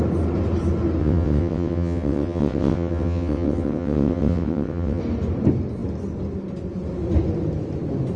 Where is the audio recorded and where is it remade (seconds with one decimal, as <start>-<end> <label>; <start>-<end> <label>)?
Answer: 0.0-1.0 recorded; 1.0-5.0 remade; 5.0-8.2 recorded